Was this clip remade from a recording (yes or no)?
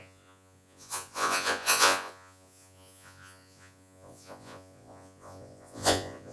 yes